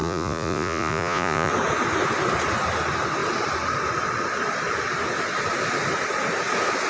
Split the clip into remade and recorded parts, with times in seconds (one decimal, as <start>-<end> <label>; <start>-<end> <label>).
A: 0.0-1.5 remade; 1.5-6.9 recorded